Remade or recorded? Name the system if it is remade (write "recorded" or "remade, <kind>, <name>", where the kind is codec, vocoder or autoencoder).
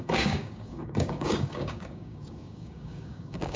remade, codec, DAC